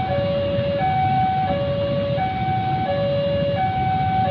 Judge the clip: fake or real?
real